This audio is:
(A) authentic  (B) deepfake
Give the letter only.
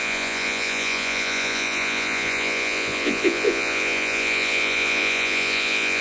B